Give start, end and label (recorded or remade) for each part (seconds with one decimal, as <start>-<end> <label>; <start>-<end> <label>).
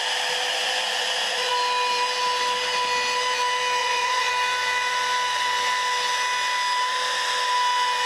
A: 0.0-0.5 recorded; 0.5-1.5 remade; 1.5-3.8 recorded; 3.8-4.3 remade; 4.3-8.1 recorded